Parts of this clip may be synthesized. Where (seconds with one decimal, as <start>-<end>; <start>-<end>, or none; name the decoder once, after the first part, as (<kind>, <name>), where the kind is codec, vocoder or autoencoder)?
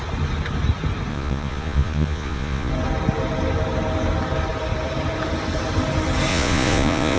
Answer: 1.1-2.7 (vocoder, Vocos); 6.3-7.2